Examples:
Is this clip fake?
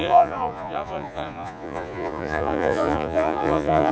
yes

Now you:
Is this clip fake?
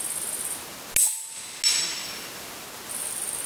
no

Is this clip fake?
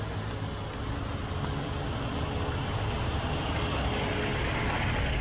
no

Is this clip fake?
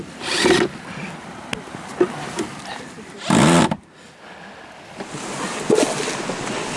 no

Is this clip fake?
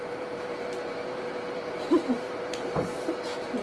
yes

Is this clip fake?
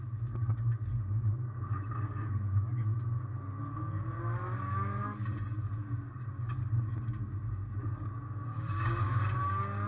yes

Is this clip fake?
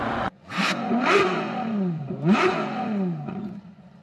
yes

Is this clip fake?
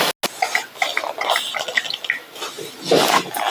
no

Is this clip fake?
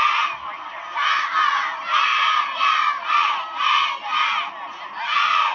no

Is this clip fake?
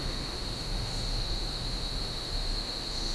yes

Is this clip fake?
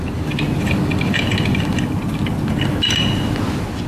no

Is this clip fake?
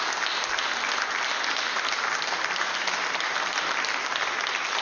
no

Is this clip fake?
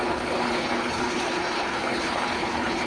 yes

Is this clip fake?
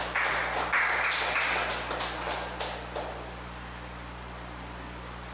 no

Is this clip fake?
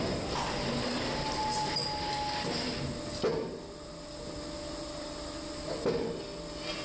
no